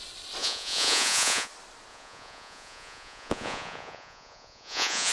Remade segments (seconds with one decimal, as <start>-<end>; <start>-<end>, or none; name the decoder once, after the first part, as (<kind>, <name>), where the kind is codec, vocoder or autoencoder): 0.4-1.5 (vocoder, Vocos); 1.9-5.1